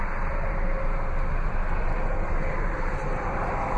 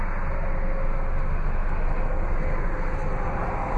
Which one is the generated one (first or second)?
first